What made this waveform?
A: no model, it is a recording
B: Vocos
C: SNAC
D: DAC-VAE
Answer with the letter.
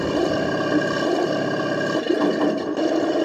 A